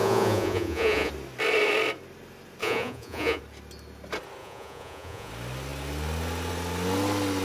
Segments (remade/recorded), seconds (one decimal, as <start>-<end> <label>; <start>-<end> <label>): 0.0-1.1 remade; 1.1-2.6 recorded; 2.6-3.4 remade; 3.4-4.4 recorded; 4.4-5.3 remade; 5.3-7.4 recorded